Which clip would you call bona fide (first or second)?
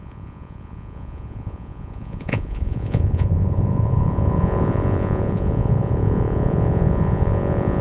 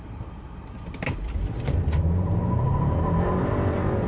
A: second